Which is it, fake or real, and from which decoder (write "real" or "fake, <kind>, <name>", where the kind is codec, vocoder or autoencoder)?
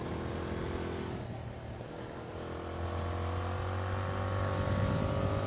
real